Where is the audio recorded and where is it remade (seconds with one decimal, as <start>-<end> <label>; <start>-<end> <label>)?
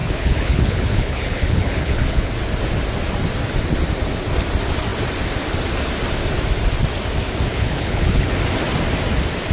0.0-2.3 remade; 2.3-7.5 recorded; 7.5-8.3 remade; 8.3-9.5 recorded